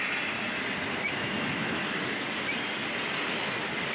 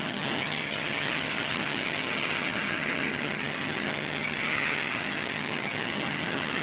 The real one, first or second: first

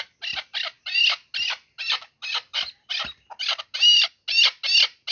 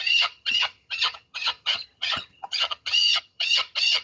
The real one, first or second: first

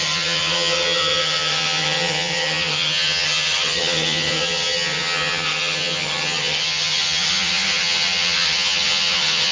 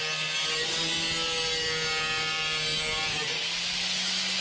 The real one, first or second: second